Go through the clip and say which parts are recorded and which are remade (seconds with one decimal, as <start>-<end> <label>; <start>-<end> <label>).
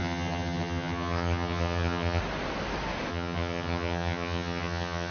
0.0-2.2 remade; 2.2-3.1 recorded; 3.1-5.1 remade